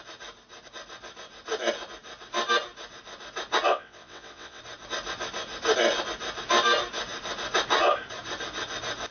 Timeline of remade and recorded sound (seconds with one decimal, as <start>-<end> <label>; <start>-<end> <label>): 0.0-3.7 recorded; 3.7-4.6 remade; 4.6-9.1 recorded